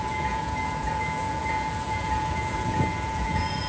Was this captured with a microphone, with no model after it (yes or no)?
no